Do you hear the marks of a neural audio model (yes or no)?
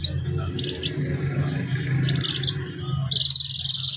no